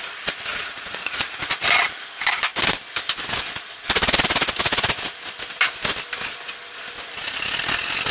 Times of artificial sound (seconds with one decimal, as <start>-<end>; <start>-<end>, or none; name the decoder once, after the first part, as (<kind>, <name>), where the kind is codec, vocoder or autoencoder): 0.5-1.4 (vocoder, Vocos)